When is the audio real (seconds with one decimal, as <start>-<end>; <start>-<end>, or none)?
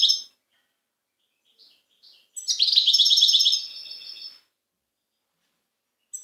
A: 0.0-6.2